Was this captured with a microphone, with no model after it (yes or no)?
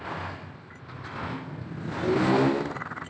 yes